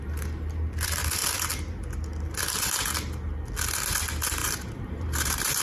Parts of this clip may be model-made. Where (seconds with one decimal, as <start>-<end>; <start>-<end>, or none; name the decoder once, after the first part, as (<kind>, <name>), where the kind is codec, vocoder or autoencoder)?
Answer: 4.4-5.6 (vocoder, BigVGAN v2)